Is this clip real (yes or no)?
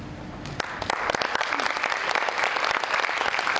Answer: yes